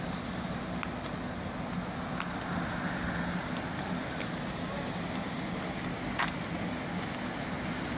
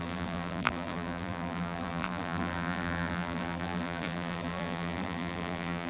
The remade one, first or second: second